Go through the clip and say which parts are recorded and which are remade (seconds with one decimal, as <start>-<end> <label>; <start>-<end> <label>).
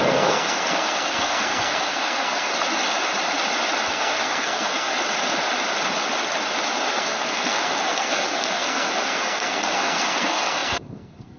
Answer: 0.0-2.5 remade; 2.5-3.9 recorded; 3.9-4.9 remade; 4.9-6.9 recorded; 6.9-11.4 remade